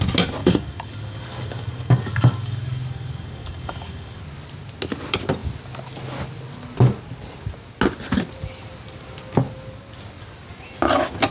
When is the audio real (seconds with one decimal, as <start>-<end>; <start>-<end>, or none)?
0.0-0.4; 4.2-11.3